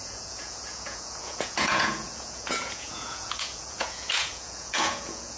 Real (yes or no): no